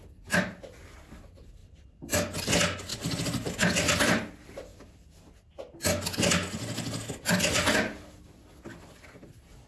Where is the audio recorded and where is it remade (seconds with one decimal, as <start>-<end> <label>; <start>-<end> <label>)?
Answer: 0.0-2.9 recorded; 2.9-3.6 remade; 3.6-9.7 recorded